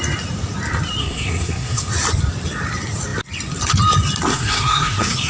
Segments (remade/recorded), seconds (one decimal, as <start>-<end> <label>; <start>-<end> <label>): 0.0-1.0 recorded; 1.0-1.9 remade; 1.9-4.3 recorded; 4.3-5.3 remade